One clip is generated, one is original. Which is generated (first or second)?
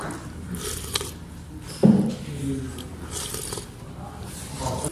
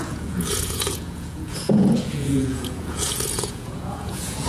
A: second